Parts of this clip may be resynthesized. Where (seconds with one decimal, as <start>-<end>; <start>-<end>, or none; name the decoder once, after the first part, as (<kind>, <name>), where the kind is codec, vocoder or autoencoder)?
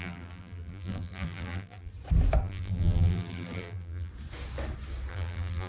0.0-1.9 (vocoder, BigVGAN v2); 2.4-4.1; 5.1-5.7